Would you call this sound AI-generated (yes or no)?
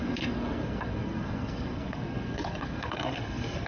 yes